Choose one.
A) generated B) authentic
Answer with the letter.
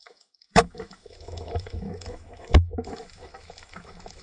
A